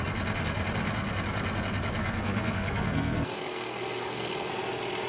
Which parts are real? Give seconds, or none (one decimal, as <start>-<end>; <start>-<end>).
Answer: 0.0-2.0; 4.5-5.1